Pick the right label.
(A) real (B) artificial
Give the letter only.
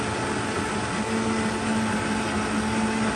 A